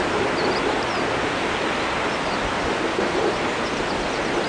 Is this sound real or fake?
real